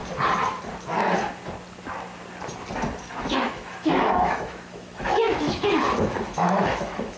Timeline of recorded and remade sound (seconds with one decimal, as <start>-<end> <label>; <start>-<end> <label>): 0.0-3.2 recorded; 3.2-7.2 remade